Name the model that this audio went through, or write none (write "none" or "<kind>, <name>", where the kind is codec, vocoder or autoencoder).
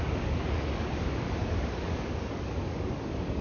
codec, DAC